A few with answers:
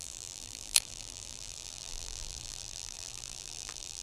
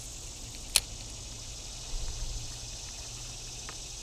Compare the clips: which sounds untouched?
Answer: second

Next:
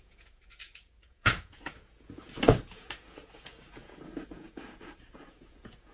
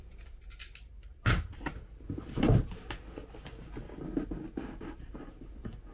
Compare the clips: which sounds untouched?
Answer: second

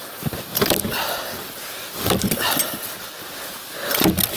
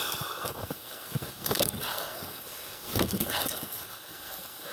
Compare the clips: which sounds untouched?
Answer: first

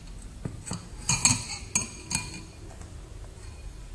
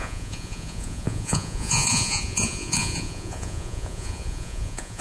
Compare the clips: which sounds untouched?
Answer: first